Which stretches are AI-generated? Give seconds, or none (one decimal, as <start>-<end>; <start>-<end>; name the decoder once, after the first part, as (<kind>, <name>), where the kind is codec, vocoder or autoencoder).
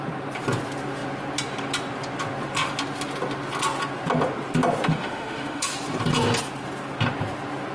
4.9-5.7 (autoencoder, DAC-VAE)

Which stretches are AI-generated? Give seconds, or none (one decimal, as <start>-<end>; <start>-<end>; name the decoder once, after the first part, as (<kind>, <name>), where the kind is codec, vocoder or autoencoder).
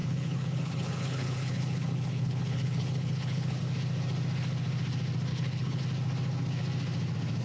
0.0-3.6 (codec, HILCodec); 5.3-5.8